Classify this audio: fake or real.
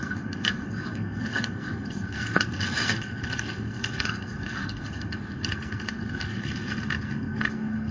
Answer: fake